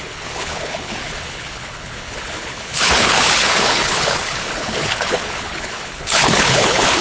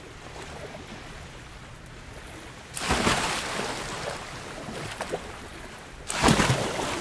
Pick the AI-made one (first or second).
first